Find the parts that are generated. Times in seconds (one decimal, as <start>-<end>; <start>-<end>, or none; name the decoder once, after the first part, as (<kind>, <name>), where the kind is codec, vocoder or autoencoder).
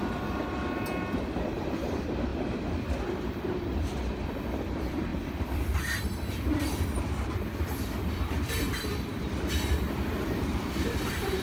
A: 0.0-11.4 (vocoder, BigVGAN v2)